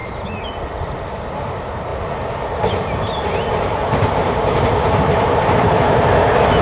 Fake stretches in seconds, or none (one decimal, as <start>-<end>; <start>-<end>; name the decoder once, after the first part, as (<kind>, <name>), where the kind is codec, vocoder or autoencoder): 1.9-5.9 (vocoder, BigVGAN v2)